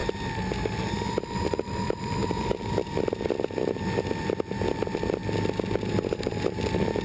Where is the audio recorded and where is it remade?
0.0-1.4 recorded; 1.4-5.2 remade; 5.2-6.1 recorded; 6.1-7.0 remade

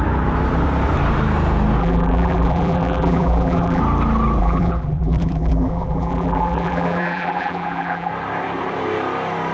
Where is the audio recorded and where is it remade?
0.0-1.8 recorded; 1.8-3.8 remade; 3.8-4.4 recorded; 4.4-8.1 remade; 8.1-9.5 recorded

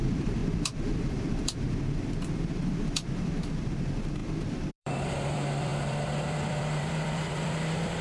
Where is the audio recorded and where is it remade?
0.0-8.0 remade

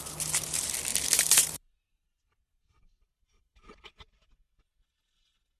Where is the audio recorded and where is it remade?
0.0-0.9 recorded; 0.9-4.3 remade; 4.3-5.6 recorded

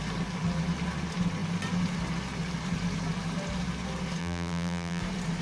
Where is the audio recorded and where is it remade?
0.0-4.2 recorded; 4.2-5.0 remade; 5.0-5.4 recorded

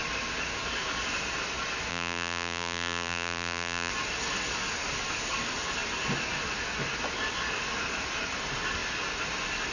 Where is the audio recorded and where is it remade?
0.0-1.9 recorded; 1.9-3.9 remade; 3.9-9.7 recorded

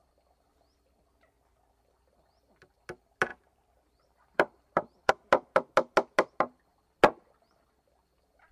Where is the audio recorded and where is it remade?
0.0-3.3 recorded; 3.3-5.1 remade; 5.1-8.5 recorded

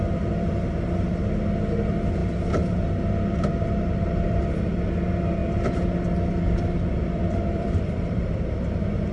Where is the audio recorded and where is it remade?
0.0-5.4 recorded; 5.4-8.5 remade; 8.5-9.1 recorded